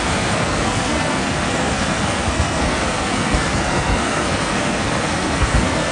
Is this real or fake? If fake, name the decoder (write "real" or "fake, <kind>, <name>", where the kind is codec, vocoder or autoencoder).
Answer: fake, codec, SNAC